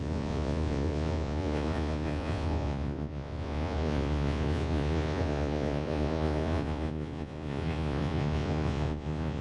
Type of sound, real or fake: fake